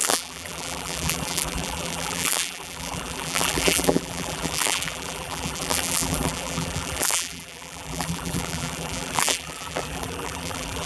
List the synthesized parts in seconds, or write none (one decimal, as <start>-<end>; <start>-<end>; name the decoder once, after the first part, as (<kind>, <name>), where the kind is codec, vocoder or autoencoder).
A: 0.0-10.9 (vocoder, BigVGAN v2)